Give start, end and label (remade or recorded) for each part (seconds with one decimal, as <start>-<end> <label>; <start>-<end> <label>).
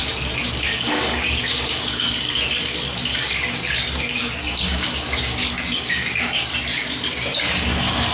0.0-0.7 recorded; 0.7-2.4 remade; 2.4-3.1 recorded; 3.1-6.5 remade; 6.5-7.3 recorded; 7.3-8.1 remade